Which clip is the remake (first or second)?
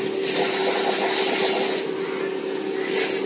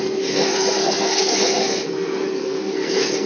second